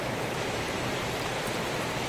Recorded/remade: remade